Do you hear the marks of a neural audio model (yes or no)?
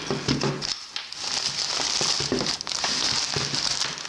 no